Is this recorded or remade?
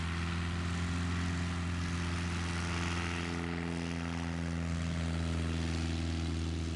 recorded